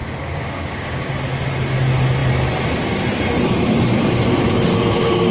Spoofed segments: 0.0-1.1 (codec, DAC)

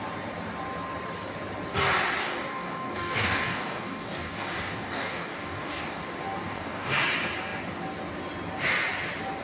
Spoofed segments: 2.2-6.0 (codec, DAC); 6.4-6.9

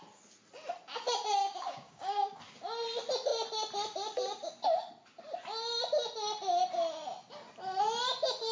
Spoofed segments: 1.4-2.4 (codec, DAC)

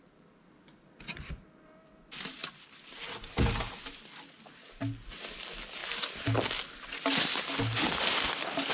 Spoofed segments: none

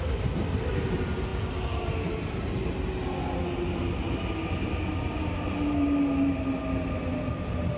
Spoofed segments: none